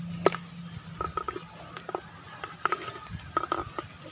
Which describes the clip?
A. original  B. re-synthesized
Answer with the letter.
A